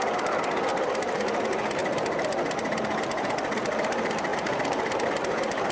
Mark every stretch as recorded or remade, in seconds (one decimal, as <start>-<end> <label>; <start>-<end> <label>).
0.0-5.7 recorded